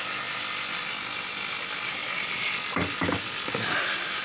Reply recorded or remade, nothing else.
recorded